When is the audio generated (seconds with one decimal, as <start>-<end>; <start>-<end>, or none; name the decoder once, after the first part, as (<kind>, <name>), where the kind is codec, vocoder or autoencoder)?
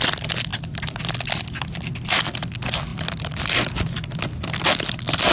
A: none